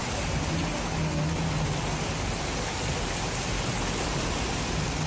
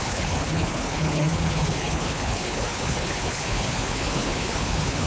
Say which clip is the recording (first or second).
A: first